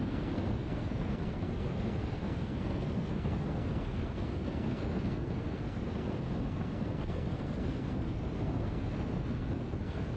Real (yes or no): no